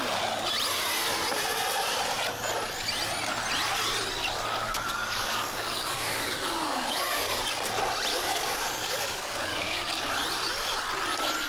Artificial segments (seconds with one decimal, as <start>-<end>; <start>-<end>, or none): 4.6-7.4; 8.1-10.1